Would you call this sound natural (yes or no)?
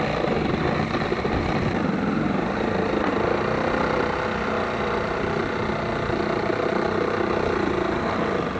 yes